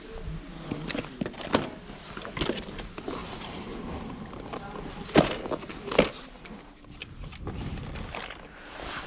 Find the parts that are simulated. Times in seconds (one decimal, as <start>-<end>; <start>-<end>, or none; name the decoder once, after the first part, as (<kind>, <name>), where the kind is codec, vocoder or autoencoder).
3.2-4.9 (vocoder, BigVGAN v2)